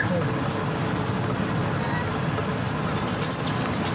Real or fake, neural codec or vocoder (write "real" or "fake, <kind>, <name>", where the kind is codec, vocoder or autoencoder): real